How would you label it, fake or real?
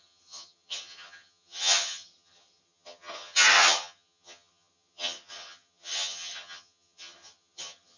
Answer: fake